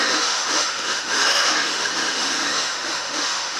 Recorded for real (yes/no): no